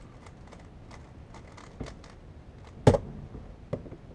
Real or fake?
real